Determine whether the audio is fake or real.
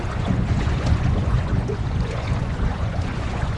fake